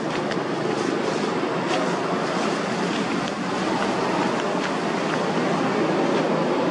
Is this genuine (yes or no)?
yes